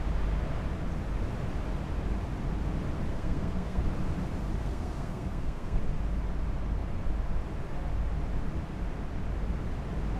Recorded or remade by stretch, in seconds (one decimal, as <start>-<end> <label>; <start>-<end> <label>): 0.0-3.1 recorded; 3.1-3.8 remade; 3.8-4.6 recorded; 4.6-5.8 remade; 5.8-10.2 recorded